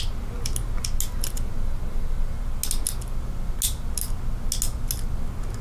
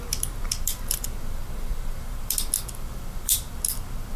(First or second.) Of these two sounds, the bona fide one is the first